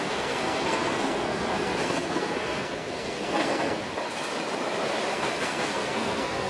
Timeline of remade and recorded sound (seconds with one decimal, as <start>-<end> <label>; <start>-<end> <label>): 0.0-3.8 remade; 3.8-5.1 recorded; 5.1-6.5 remade